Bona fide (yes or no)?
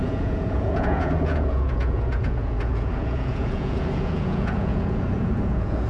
no